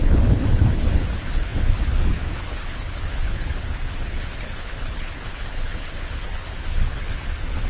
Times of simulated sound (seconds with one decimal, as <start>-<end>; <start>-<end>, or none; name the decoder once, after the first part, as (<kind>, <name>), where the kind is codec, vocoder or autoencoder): 0.0-7.7 (codec, HILCodec)

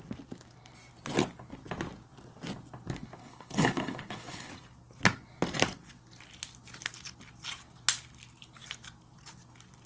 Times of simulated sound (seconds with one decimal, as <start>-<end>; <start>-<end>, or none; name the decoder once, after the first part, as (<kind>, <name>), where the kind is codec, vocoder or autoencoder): 3.2-4.5 (codec, HILCodec)

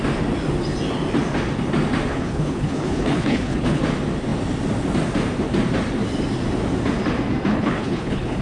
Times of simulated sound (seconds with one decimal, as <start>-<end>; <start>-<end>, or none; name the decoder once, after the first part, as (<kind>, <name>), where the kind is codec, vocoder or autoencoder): 2.1-3.8 (codec, HILCodec); 7.5-8.4

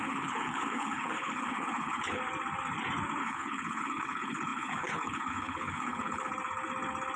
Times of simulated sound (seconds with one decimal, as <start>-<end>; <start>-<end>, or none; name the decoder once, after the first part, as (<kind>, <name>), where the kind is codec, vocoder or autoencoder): 0.0-2.2 (codec, HILCodec); 3.2-6.3

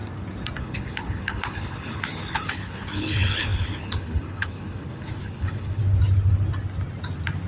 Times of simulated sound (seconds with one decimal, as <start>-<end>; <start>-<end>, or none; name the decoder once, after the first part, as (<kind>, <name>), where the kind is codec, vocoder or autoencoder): 0.6-5.8 (codec, HILCodec)

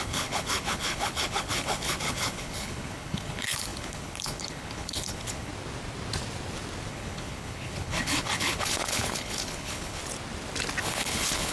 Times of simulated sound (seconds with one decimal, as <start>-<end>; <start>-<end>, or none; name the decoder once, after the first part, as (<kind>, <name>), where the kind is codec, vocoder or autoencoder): 0.0-5.5 (codec, HILCodec); 6.9-10.0; 10.8-11.5